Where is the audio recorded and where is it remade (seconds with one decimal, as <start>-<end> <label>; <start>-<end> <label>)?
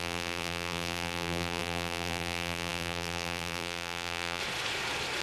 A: 0.0-4.4 remade; 4.4-5.2 recorded